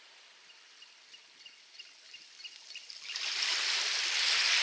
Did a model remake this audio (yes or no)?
no